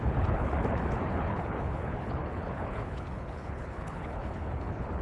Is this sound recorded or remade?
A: remade